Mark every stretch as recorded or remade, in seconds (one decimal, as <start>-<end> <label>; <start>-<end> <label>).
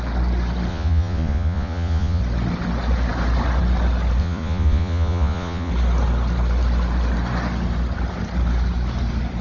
0.0-0.7 recorded; 0.7-2.2 remade; 2.2-4.2 recorded; 4.2-5.7 remade; 5.7-9.4 recorded